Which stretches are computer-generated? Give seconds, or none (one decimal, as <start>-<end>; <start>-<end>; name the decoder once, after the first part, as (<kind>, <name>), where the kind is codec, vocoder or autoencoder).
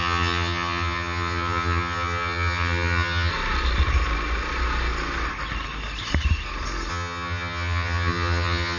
0.0-3.3 (vocoder, HiFi-GAN); 6.9-8.8